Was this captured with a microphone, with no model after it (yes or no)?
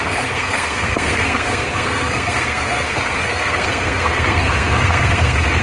no